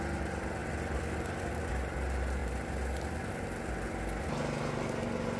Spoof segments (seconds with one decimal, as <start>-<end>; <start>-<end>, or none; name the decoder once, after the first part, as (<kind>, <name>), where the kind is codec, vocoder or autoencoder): none